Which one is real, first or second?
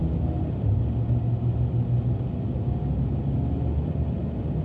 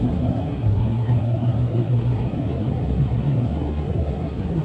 first